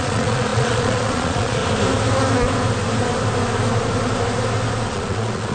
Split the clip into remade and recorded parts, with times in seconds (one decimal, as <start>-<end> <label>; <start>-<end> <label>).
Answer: 0.0-1.6 remade; 1.6-4.9 recorded; 4.9-5.5 remade